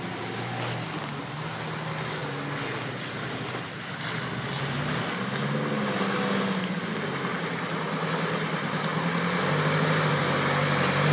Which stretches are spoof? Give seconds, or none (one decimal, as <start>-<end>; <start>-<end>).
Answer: none